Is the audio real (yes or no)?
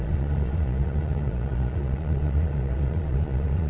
no